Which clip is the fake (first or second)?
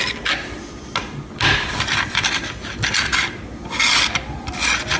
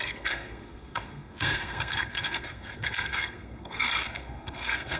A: second